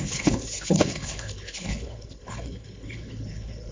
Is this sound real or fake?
fake